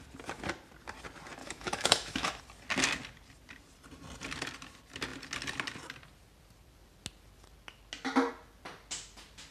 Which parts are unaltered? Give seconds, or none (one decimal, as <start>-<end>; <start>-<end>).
0.0-1.4; 2.4-9.5